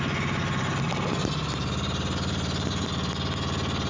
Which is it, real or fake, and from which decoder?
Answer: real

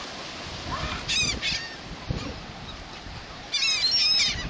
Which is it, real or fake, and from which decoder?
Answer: real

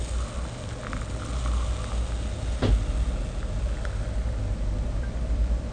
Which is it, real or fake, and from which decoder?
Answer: real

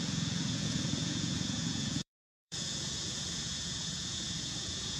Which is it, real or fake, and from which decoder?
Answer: fake, vocoder, Vocos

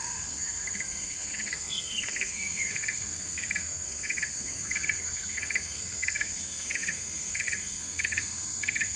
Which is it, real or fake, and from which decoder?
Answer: fake, codec, SNAC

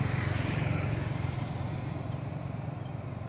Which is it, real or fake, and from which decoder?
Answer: real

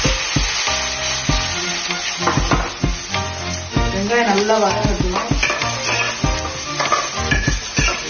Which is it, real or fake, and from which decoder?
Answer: real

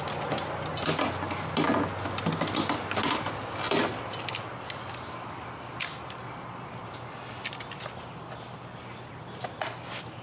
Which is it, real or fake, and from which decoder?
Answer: real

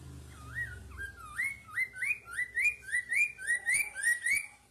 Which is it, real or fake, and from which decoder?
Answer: real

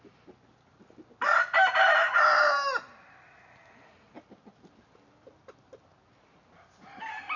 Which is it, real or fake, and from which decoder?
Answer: real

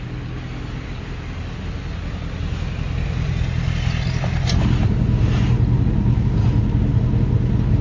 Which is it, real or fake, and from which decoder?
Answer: real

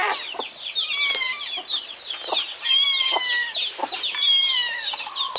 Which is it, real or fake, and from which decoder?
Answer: real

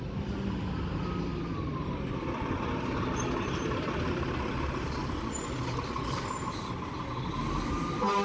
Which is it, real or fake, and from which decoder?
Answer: real